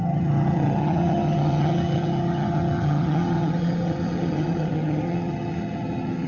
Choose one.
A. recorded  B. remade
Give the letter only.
B